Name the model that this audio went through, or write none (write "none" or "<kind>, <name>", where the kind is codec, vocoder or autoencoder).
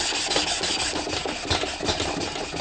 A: none